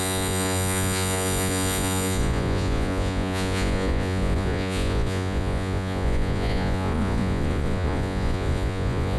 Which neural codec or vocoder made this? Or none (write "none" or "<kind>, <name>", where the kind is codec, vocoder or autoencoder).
vocoder, Vocos